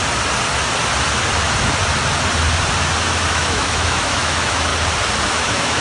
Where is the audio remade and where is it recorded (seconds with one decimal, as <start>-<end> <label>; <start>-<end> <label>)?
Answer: 0.0-3.3 recorded; 3.3-4.7 remade; 4.7-5.3 recorded; 5.3-5.8 remade